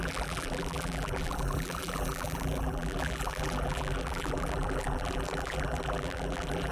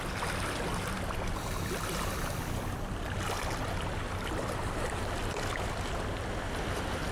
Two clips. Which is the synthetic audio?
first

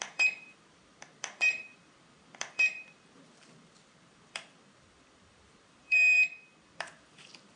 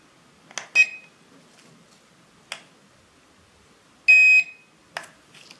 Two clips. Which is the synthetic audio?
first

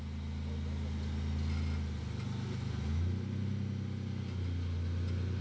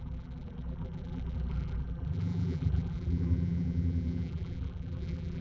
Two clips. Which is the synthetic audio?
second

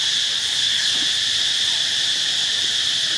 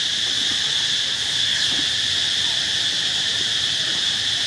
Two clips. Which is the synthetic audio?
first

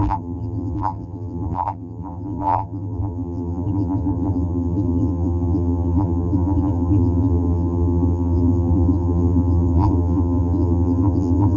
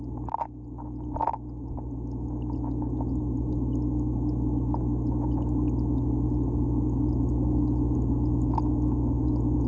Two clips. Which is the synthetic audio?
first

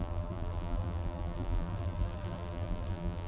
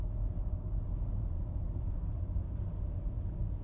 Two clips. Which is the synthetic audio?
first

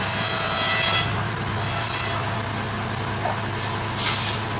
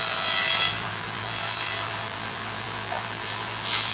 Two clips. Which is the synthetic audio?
second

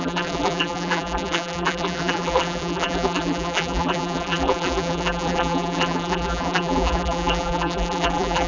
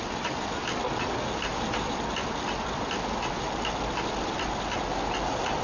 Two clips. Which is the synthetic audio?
first